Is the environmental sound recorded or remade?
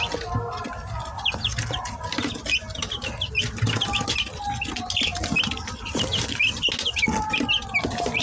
recorded